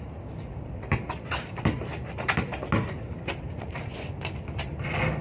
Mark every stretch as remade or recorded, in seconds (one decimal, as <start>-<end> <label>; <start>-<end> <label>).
0.0-1.9 remade; 1.9-3.3 recorded; 3.3-3.9 remade; 3.9-5.2 recorded